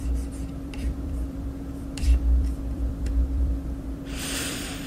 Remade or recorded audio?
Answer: remade